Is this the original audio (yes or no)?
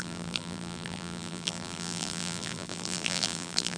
no